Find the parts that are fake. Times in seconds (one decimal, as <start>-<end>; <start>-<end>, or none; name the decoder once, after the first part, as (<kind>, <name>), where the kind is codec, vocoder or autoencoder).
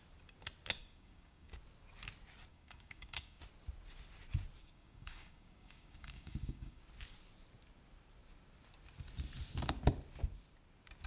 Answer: 0.8-1.5 (codec, DAC); 2.5-3.4; 4.6-6.8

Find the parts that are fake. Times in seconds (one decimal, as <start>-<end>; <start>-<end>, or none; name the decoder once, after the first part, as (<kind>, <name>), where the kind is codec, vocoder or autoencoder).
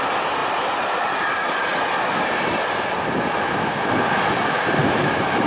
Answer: 4.8-5.5 (autoencoder, DAC-VAE)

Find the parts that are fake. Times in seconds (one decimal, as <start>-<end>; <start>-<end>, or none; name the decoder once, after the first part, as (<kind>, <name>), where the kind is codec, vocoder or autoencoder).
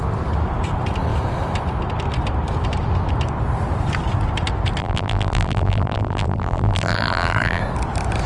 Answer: 4.8-7.6 (vocoder, BigVGAN v2)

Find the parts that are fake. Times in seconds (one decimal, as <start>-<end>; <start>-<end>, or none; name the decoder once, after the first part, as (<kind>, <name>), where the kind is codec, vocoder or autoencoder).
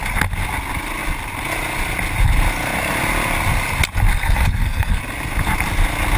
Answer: 4.1-5.0 (codec, SNAC)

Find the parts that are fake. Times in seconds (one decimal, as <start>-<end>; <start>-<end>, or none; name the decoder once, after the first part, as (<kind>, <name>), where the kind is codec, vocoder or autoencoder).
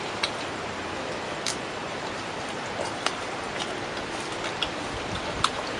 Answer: 1.8-3.6 (vocoder, BigVGAN v2)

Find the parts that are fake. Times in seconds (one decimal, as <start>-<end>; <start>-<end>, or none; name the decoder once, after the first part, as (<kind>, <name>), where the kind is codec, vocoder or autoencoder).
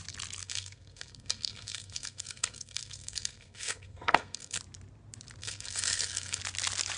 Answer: 0.4-4.6 (codec, SNAC); 5.4-6.4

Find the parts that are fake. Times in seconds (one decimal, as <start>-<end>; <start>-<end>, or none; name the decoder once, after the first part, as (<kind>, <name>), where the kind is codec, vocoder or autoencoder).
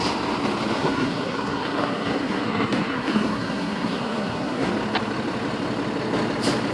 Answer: 0.7-4.7 (codec, SNAC)